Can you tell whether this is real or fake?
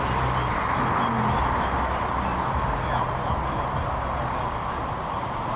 real